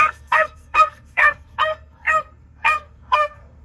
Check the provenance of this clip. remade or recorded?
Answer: remade